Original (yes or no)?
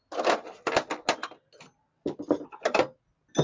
yes